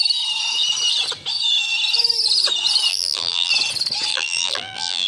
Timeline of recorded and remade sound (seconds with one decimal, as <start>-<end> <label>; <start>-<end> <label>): 0.0-2.9 recorded; 2.9-3.5 remade; 3.5-4.1 recorded; 4.1-5.1 remade